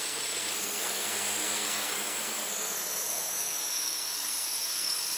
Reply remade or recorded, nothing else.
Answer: remade